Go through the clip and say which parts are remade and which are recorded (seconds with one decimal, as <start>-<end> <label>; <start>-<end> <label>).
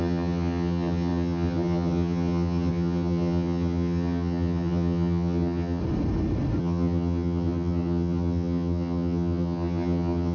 0.0-5.8 remade; 5.8-6.6 recorded; 6.6-10.3 remade